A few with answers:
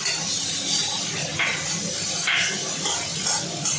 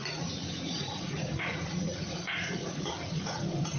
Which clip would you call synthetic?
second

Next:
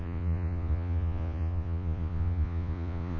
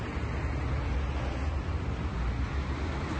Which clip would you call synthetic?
first